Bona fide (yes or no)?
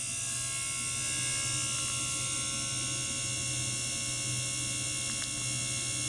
yes